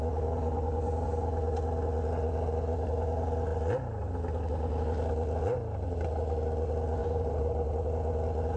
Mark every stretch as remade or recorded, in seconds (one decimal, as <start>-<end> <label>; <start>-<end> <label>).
0.0-7.0 recorded; 7.0-7.7 remade; 7.7-8.6 recorded